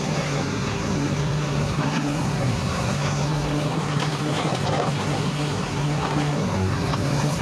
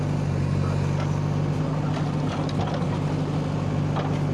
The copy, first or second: first